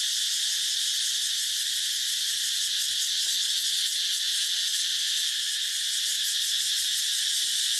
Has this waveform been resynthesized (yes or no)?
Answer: no